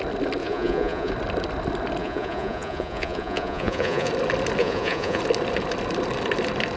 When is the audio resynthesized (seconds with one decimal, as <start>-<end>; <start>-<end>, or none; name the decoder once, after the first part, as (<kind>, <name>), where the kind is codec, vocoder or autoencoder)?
0.4-1.1 (vocoder, Vocos); 2.0-4.1; 4.6-5.2